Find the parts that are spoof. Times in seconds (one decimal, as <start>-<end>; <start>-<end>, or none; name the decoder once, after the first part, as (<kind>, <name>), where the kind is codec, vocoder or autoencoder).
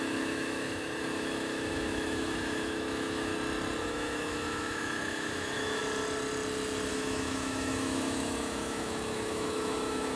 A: 0.0-3.3 (autoencoder, DAC-VAE); 3.8-5.8; 6.9-10.2